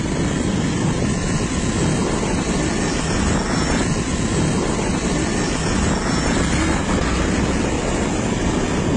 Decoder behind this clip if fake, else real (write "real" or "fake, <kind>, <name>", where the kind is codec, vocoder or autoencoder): real